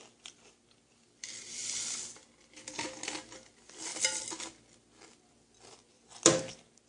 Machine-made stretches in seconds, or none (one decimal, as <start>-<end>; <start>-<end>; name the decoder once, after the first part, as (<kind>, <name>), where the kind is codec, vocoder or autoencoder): none